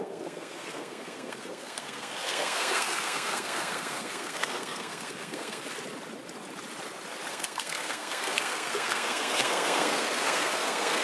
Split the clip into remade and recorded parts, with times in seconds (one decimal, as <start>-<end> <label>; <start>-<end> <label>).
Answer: 0.0-5.6 remade; 5.6-7.3 recorded; 7.3-11.0 remade